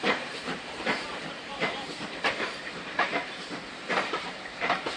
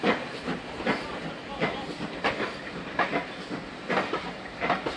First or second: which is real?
second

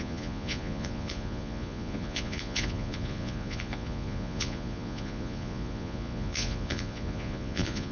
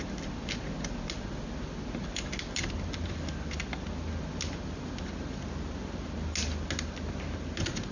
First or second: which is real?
second